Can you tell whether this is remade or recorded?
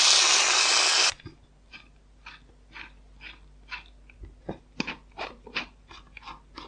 recorded